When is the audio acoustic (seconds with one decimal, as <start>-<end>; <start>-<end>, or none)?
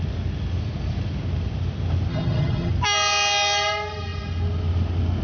0.0-2.1; 2.7-5.2